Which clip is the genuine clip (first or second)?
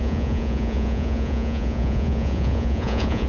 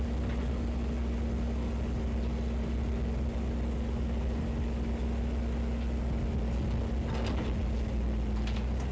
second